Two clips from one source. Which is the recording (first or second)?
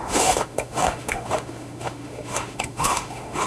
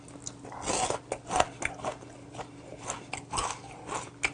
second